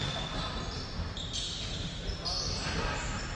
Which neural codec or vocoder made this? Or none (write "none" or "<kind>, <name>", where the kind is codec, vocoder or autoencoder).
none